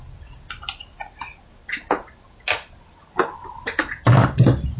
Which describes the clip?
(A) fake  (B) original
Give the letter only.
B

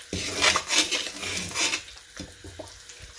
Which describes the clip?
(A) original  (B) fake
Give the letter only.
A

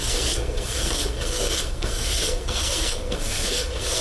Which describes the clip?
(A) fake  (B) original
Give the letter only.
A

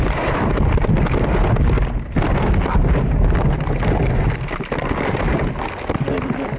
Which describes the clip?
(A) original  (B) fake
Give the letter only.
A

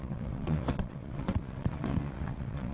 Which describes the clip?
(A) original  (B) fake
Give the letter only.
B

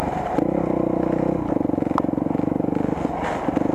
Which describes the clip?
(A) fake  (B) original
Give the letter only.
B